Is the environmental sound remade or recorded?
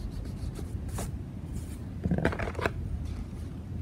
recorded